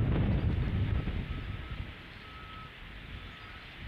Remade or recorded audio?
recorded